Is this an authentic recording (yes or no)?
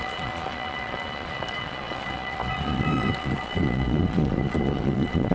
no